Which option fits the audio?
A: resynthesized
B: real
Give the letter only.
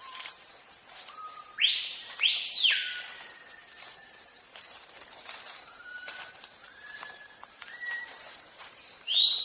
A